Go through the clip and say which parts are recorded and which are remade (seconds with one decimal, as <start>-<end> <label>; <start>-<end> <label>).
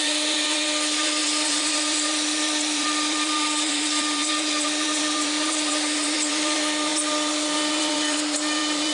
0.0-8.9 remade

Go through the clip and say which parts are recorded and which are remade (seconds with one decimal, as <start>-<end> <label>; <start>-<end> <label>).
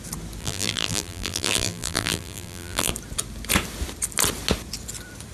0.0-0.4 recorded; 0.4-2.9 remade; 2.9-5.3 recorded